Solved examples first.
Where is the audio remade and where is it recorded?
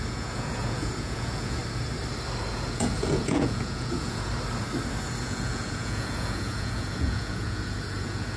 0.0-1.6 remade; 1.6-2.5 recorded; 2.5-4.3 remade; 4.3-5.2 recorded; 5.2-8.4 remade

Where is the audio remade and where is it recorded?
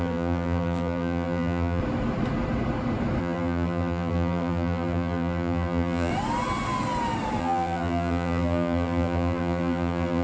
0.0-1.8 remade; 1.8-3.2 recorded; 3.2-6.1 remade; 6.1-7.4 recorded; 7.4-10.2 remade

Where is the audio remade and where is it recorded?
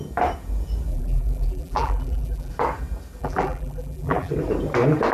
0.0-0.9 recorded; 0.9-2.5 remade; 2.5-3.2 recorded; 3.2-4.3 remade; 4.3-5.1 recorded